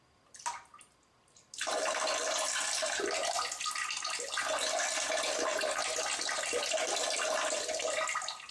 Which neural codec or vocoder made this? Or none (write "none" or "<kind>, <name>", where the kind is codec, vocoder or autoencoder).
none